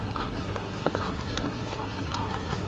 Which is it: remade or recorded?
remade